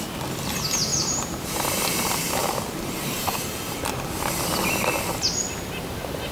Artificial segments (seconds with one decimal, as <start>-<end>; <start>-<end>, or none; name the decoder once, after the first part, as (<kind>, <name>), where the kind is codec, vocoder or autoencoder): 0.9-4.2 (vocoder, BigVGAN v2)